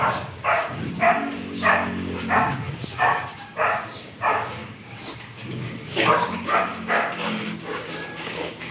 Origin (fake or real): fake